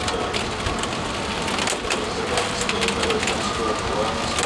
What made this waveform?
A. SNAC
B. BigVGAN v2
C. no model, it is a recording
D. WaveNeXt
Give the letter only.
C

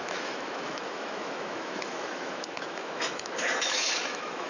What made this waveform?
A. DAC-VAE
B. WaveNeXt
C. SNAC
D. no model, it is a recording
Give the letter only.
A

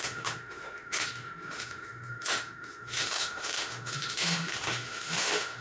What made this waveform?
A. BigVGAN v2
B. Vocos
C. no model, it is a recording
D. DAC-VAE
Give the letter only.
D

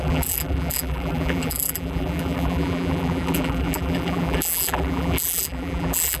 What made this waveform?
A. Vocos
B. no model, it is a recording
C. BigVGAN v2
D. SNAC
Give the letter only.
C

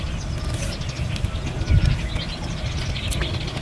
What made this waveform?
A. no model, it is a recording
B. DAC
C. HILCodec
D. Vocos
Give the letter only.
A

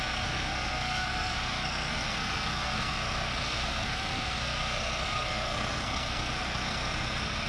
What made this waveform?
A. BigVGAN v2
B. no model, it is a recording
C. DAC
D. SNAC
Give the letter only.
D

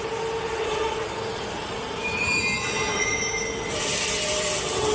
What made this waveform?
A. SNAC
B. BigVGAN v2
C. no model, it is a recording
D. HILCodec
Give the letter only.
B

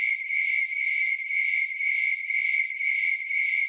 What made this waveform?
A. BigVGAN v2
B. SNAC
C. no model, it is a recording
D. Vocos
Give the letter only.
A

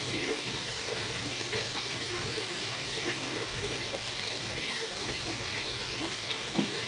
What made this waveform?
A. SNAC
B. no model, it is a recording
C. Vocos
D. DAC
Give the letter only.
D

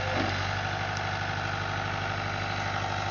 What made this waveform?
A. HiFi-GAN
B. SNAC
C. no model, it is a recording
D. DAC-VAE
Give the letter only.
C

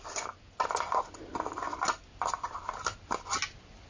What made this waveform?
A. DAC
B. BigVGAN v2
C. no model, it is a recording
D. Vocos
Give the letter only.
C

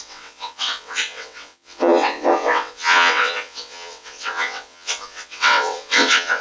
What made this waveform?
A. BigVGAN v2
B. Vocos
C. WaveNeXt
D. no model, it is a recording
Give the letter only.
C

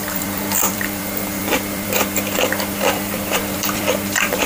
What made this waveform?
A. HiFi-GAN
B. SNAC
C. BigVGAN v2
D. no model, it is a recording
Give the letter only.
C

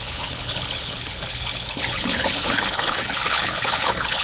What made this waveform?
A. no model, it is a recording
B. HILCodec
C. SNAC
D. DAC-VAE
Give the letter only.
B